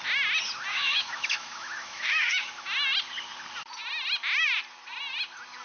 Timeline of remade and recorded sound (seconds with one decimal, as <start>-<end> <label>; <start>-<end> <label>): 0.0-0.7 recorded; 0.7-2.5 remade; 2.5-5.6 recorded